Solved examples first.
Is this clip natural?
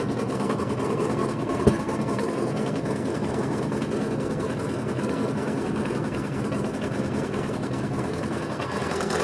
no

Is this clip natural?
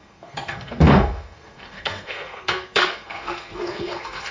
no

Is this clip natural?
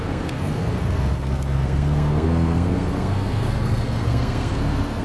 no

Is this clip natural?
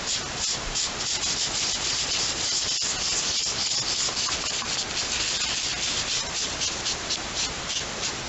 yes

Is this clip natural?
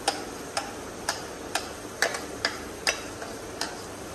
yes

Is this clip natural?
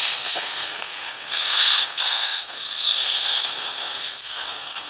no